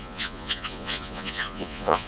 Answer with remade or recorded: remade